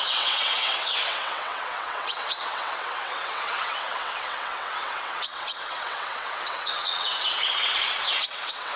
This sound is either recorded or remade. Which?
remade